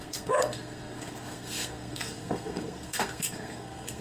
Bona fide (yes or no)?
no